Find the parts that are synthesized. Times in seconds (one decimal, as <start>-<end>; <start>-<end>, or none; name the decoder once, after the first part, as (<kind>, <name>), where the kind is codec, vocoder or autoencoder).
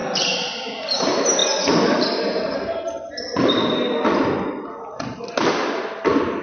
none